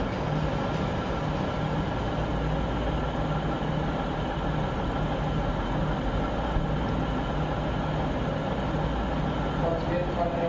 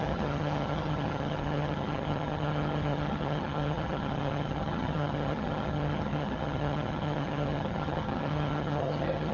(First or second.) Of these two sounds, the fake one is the second